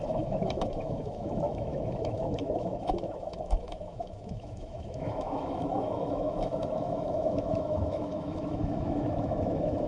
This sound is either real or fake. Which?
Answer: fake